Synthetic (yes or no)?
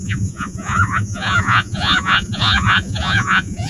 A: yes